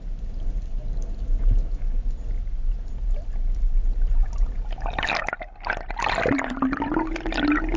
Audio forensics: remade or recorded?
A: recorded